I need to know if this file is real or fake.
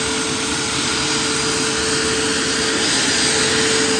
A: real